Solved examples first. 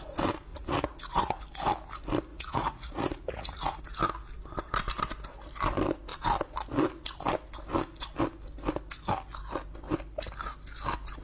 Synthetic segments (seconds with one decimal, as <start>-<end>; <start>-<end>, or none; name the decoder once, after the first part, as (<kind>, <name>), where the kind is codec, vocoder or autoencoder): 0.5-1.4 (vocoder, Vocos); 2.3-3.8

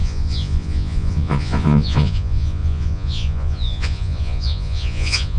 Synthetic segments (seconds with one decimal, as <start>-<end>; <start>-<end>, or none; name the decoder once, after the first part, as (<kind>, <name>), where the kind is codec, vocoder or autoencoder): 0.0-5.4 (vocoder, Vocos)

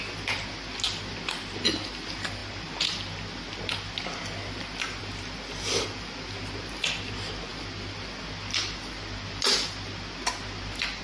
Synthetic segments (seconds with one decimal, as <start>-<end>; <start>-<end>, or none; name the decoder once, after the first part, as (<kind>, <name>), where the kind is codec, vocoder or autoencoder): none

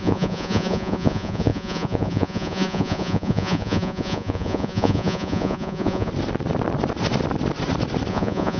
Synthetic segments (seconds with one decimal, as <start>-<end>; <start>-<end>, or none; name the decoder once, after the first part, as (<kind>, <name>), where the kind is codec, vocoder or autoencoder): 0.0-6.1 (vocoder, Vocos); 8.1-8.6

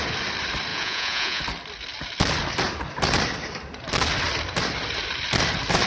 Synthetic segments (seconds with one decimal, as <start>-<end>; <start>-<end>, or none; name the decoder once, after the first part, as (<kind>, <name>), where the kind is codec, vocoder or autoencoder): 0.7-1.4 (vocoder, Vocos)

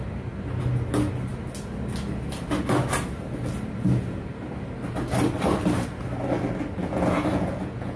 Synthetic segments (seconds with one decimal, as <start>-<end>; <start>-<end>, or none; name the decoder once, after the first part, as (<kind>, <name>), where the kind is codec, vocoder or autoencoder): 6.8-8.0 (vocoder, Vocos)

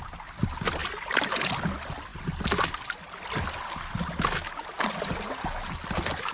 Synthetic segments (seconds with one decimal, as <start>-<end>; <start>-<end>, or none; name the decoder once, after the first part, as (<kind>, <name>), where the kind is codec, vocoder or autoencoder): none

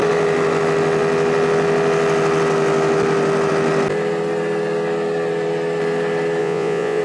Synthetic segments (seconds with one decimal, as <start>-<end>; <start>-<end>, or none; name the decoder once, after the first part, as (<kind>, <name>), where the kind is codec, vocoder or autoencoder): 6.4-7.0 (vocoder, Vocos)